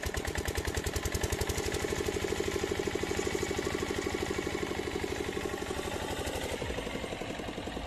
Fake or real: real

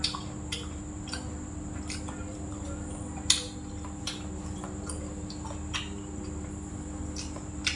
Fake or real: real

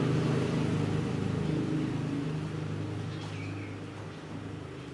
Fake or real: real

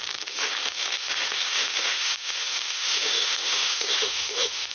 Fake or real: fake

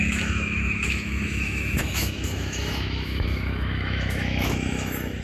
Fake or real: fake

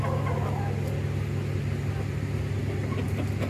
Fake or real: real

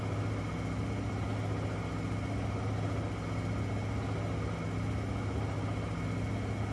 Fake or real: real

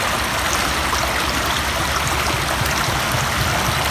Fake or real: real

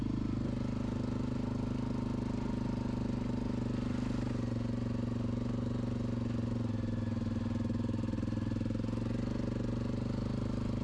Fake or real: real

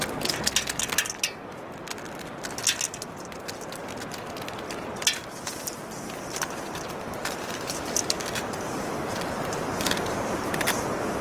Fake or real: real